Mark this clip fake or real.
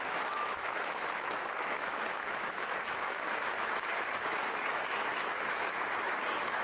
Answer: fake